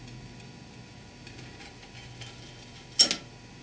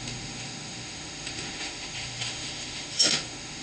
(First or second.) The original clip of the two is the first